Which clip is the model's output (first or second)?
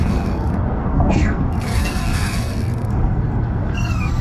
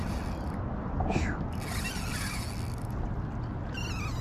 first